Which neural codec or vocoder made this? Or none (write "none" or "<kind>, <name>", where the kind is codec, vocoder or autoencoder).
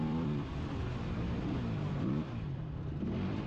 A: vocoder, BigVGAN v2